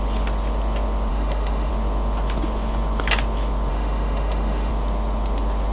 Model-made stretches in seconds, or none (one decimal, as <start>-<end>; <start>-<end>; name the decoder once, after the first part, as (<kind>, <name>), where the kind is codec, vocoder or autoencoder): 1.1-1.7 (autoencoder, DAC-VAE); 3.7-4.7